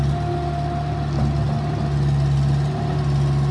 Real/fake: real